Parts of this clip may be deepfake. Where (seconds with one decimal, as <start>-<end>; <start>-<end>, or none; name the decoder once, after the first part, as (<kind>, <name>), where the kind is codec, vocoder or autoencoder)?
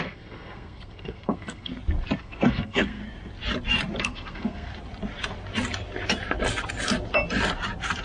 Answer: 0.0-1.7 (codec, SNAC); 2.2-3.0; 4.0-4.7